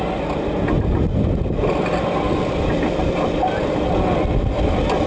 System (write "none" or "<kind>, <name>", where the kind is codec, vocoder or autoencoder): none